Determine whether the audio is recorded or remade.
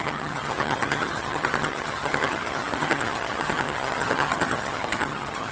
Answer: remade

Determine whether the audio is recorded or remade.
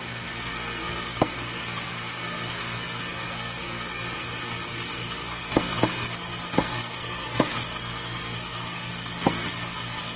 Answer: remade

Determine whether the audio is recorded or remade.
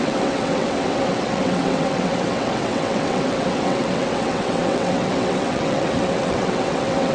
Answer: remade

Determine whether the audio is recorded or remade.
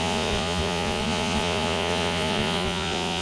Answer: remade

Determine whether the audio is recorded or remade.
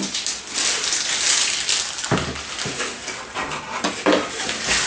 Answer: recorded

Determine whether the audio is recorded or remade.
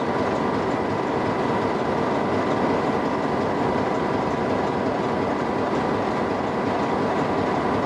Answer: recorded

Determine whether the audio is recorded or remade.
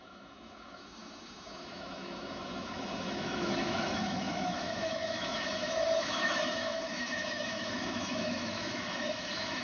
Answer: remade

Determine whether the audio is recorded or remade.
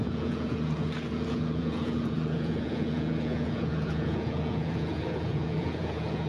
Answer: remade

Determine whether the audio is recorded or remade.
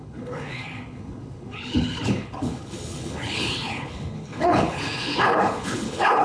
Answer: remade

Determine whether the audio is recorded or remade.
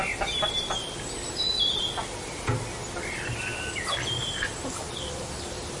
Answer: recorded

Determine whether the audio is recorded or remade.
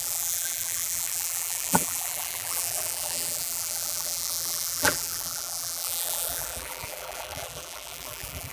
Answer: remade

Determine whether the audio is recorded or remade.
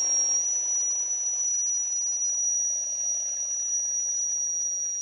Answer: recorded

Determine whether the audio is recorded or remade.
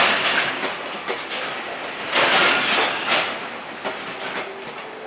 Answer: recorded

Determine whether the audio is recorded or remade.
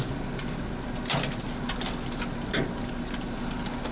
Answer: recorded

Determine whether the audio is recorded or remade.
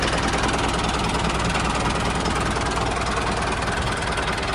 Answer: recorded